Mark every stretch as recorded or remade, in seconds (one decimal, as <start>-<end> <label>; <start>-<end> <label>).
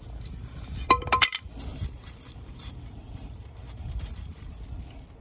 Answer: 0.0-1.7 recorded; 1.7-4.5 remade; 4.5-5.2 recorded